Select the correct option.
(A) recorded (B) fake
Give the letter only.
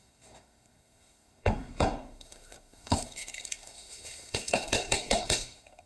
B